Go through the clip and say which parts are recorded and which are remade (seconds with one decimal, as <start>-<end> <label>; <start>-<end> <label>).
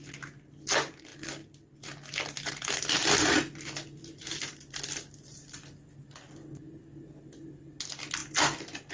0.0-8.9 recorded